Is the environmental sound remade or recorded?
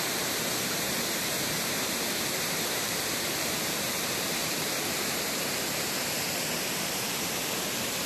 remade